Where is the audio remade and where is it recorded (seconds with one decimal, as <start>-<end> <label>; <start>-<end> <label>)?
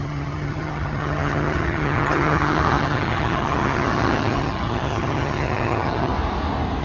0.0-6.1 remade; 6.1-6.8 recorded